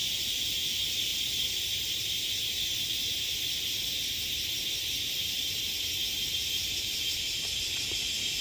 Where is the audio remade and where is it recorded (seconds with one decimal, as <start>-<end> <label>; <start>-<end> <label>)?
0.0-0.5 remade; 0.5-1.1 recorded; 1.1-1.9 remade; 1.9-6.0 recorded; 6.0-7.8 remade; 7.8-8.4 recorded